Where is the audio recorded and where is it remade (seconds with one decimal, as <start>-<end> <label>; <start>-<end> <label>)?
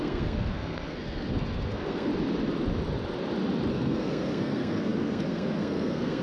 0.0-2.1 remade; 2.1-3.7 recorded; 3.7-6.2 remade